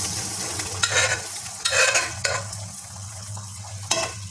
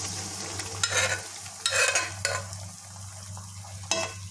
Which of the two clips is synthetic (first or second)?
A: first